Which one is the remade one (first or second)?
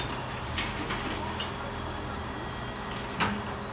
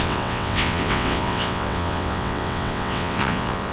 second